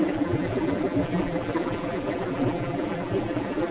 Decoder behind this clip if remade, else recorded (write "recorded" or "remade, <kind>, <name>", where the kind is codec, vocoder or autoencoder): remade, vocoder, BigVGAN v2